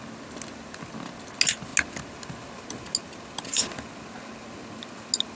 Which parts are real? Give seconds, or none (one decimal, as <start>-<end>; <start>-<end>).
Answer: 0.0-5.4